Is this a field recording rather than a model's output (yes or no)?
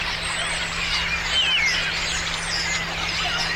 yes